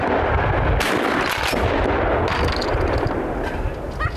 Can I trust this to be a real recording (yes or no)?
yes